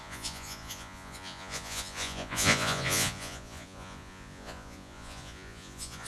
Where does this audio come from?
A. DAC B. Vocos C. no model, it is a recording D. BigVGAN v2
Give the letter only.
B